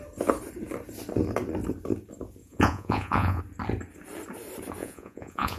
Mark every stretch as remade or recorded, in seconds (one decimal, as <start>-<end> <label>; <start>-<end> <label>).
0.0-2.4 recorded; 2.4-3.4 remade; 3.4-4.8 recorded; 4.8-5.6 remade

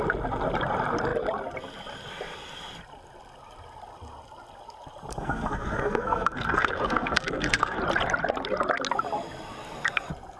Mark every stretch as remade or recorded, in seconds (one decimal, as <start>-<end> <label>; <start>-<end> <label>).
0.0-5.1 recorded; 5.1-7.8 remade; 7.8-10.4 recorded

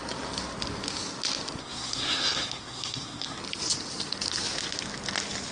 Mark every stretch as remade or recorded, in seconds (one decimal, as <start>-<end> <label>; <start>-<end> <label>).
0.0-1.6 recorded; 1.6-3.4 remade; 3.4-5.5 recorded

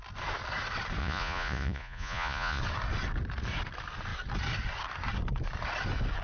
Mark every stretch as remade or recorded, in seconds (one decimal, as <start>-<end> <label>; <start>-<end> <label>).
0.0-1.0 recorded; 1.0-2.6 remade; 2.6-6.2 recorded